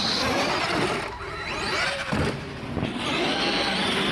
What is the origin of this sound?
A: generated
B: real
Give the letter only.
B